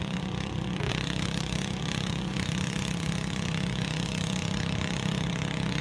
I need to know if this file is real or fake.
fake